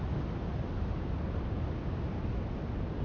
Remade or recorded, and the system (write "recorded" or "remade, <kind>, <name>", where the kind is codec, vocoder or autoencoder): recorded